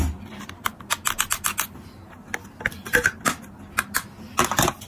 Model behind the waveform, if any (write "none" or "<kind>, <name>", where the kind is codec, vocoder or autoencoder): none